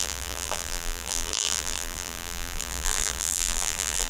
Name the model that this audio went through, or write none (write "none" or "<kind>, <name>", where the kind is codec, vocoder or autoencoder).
vocoder, BigVGAN v2